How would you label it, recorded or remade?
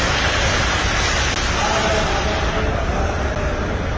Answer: recorded